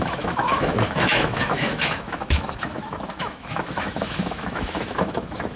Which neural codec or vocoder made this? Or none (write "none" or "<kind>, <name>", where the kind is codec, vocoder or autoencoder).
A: autoencoder, DAC-VAE